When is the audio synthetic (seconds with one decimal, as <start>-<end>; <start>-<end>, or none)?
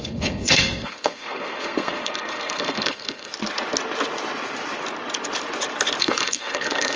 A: 0.0-3.3; 6.0-7.0